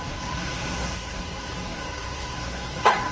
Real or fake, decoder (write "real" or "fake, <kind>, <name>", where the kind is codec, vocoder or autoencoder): fake, codec, SNAC